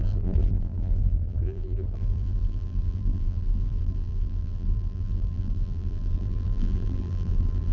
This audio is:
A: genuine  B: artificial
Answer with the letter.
B